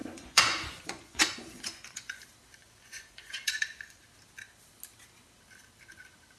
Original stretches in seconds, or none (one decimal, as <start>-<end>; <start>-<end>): 2.2-2.6; 4.0-6.4